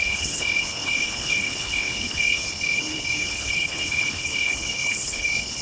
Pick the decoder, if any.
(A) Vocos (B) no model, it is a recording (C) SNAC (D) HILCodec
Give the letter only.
D